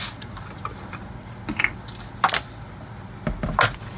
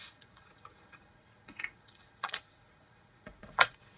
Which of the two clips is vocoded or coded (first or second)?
second